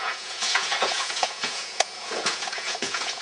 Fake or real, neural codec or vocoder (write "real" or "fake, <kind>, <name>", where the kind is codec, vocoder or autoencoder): fake, vocoder, Vocos